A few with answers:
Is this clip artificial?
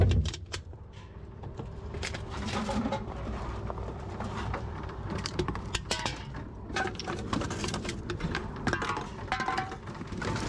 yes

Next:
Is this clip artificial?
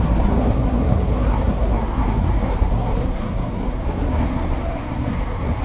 yes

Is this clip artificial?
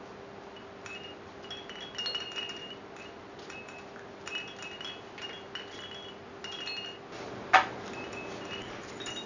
no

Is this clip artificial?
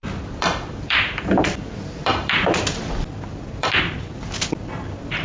yes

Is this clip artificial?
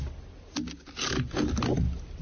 no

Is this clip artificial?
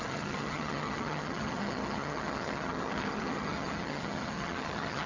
yes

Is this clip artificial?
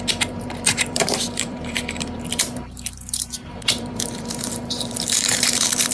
yes